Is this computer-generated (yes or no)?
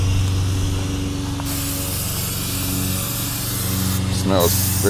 no